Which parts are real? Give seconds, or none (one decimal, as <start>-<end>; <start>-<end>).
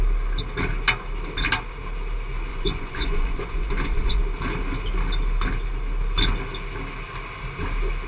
0.0-2.5; 4.2-8.1